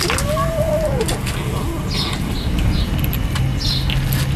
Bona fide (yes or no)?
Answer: yes